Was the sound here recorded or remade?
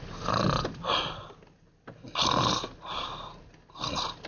recorded